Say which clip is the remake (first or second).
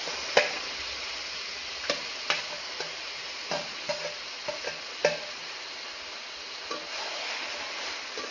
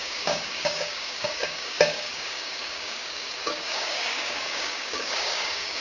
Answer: second